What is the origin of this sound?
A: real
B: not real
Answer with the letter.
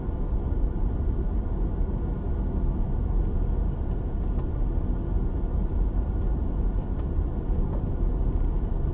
A